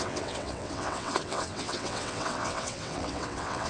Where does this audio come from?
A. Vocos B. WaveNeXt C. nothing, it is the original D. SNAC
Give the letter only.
B